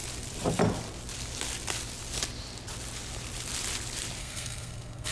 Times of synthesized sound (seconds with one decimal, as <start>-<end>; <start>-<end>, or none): 4.2-5.1